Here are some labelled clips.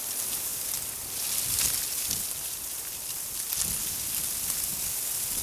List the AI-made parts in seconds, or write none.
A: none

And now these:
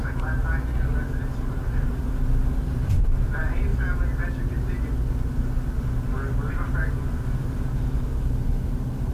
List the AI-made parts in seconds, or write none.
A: 1.5-1.9; 2.6-3.7; 6.5-9.1

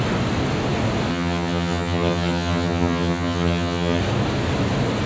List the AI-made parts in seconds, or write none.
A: 1.1-4.0

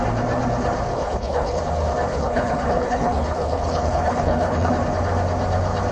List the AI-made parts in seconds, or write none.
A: 0.9-1.6; 2.1-4.7

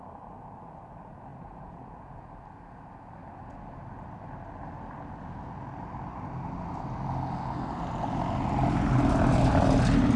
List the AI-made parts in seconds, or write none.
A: 1.3-2.3